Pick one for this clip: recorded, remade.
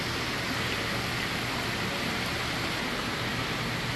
recorded